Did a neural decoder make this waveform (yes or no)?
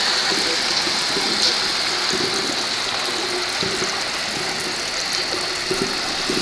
no